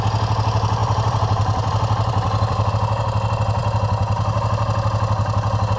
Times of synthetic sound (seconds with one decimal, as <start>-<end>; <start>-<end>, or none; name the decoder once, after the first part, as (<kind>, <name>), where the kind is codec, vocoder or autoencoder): 0.8-2.7 (vocoder, BigVGAN v2)